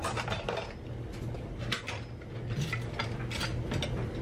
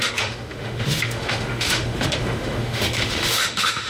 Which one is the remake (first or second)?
second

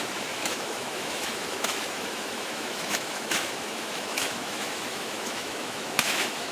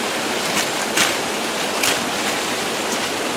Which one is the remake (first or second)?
first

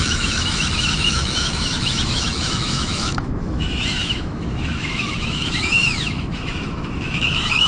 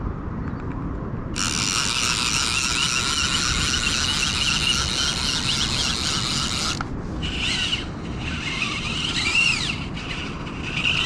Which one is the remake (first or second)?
first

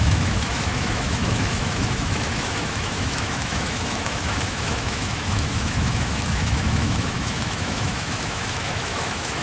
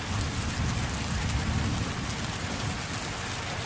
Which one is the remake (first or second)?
first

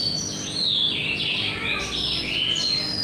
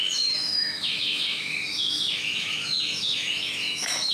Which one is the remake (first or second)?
second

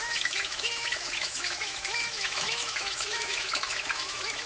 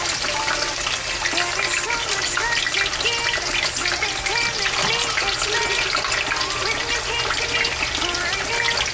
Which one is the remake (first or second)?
first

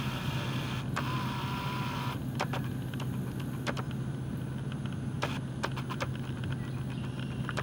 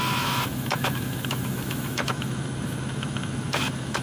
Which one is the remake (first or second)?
second